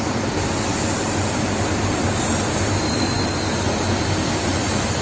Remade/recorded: recorded